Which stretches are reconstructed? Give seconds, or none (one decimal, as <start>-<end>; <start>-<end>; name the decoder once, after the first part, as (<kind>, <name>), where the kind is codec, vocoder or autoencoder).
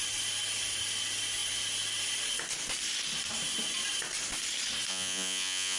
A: 4.9-5.8 (vocoder, Vocos)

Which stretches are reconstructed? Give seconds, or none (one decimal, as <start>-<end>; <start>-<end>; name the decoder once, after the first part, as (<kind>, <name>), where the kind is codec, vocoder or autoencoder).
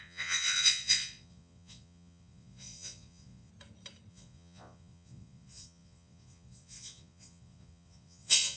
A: 0.0-3.5 (vocoder, Vocos); 4.1-8.6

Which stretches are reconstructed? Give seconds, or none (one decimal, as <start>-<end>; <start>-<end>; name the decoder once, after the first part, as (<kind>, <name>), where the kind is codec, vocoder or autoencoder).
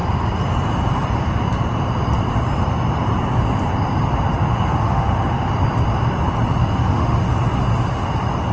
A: 4.3-5.5 (autoencoder, DAC-VAE); 6.6-7.3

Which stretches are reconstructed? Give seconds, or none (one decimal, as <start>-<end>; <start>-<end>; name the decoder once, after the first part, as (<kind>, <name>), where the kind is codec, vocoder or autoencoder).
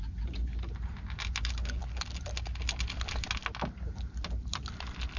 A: none